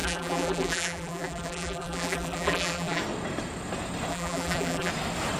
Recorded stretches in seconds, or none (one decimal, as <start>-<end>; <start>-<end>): 3.0-4.1; 4.9-5.4